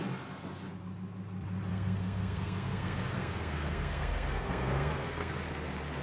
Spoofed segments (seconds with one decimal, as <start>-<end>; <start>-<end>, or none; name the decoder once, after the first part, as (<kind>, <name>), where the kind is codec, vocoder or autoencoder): 1.7-5.3 (codec, SNAC)